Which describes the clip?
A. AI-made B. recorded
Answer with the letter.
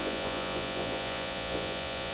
A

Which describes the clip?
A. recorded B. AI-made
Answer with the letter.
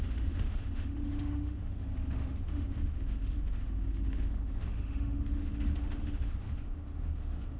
B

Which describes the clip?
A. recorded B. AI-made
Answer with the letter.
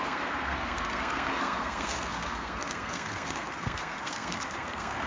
B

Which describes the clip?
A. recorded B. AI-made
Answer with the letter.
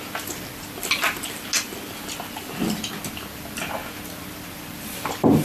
A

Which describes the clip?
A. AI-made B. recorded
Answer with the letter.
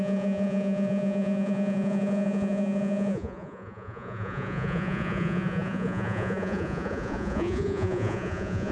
A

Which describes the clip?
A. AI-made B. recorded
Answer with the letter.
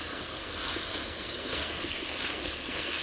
A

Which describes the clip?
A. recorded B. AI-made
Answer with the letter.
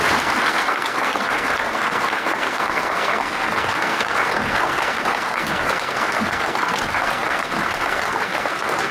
B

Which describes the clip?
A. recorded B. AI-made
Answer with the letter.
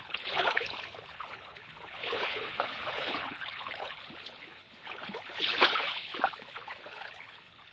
B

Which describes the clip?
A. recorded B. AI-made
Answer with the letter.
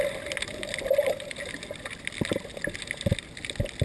A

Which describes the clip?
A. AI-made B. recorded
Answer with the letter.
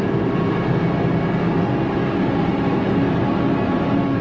B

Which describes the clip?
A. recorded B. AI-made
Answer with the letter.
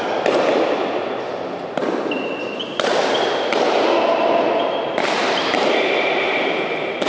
A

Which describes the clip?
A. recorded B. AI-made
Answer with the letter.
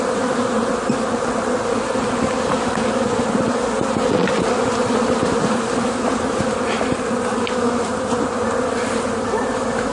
A